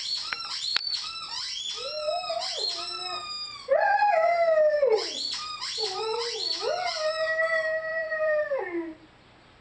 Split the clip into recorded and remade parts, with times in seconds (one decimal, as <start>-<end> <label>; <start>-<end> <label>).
0.0-0.7 recorded; 0.7-1.4 remade; 1.4-7.9 recorded; 7.9-8.6 remade; 8.6-9.6 recorded